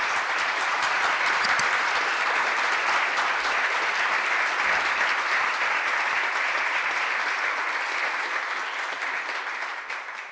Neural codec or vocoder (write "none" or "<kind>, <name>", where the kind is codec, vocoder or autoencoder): none